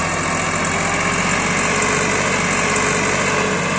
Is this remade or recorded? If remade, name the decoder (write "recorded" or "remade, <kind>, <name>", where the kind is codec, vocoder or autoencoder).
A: recorded